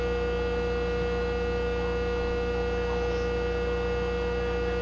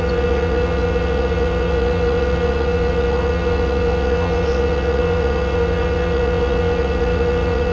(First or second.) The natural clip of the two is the first